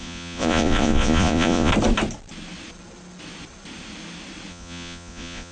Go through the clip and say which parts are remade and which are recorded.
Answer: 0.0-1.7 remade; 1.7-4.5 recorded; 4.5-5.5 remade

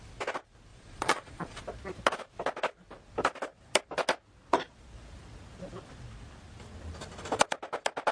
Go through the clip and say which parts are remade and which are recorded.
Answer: 0.0-0.7 recorded; 0.7-1.6 remade; 1.6-8.1 recorded